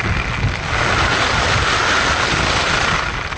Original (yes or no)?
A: yes